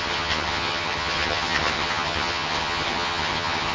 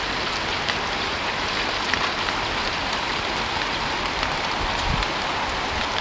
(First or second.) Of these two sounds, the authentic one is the second